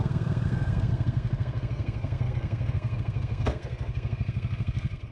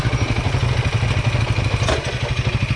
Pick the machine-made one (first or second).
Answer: first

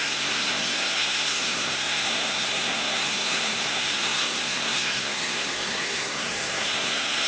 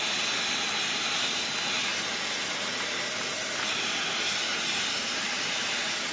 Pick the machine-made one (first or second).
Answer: first